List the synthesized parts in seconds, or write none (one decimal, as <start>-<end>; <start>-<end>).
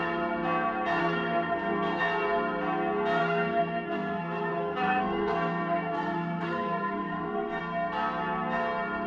1.0-2.0; 3.2-7.6